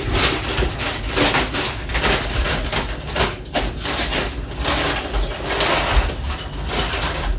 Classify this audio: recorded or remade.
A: recorded